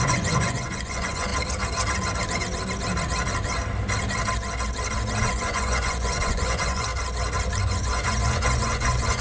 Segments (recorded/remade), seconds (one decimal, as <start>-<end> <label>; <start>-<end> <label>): 0.0-1.3 remade; 1.3-5.2 recorded; 5.2-6.9 remade; 6.9-7.6 recorded; 7.6-9.2 remade